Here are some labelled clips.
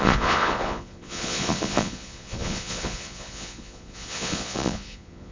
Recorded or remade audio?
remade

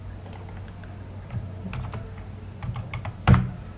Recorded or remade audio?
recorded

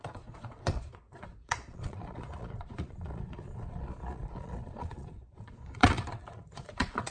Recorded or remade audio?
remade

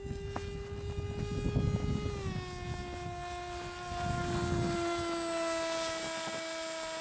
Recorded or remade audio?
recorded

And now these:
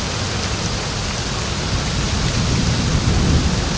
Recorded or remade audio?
recorded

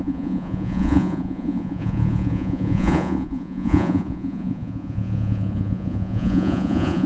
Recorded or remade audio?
remade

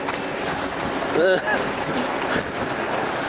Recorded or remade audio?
recorded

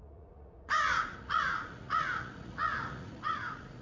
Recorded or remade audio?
remade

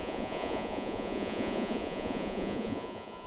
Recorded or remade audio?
remade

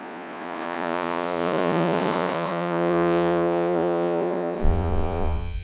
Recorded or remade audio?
remade